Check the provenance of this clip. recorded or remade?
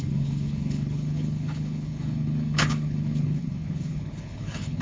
remade